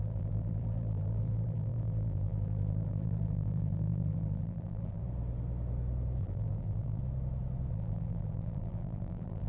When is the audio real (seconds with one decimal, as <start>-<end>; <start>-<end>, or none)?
5.0-6.2; 7.0-7.7